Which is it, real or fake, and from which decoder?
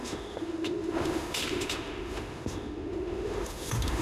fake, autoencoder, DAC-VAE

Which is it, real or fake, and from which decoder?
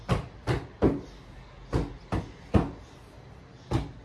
real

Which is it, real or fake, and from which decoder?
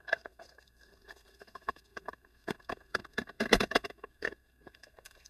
fake, codec, SNAC